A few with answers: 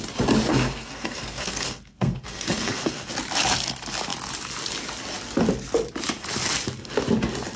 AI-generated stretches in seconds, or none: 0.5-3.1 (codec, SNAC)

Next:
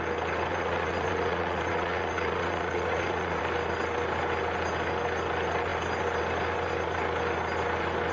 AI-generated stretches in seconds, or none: 0.5-3.4 (vocoder, Vocos)

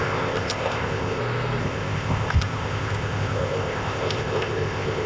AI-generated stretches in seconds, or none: 0.0-1.2 (codec, ZipCodec); 1.6-5.1

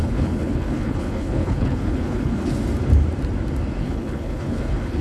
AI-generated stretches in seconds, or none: 0.0-2.5 (codec, HILCodec); 3.8-5.0

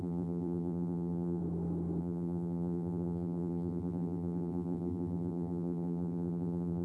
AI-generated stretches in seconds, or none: 0.0-1.4 (vocoder, BigVGAN v2); 2.0-6.8

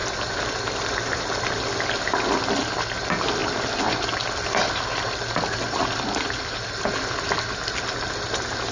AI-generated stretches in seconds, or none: 3.4-5.8 (vocoder, BigVGAN v2)

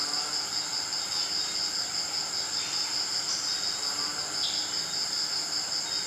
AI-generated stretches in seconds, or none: none